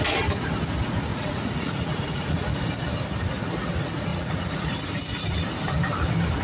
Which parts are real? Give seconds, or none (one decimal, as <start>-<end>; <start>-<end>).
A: 0.0-1.1; 2.6-4.1; 4.7-6.4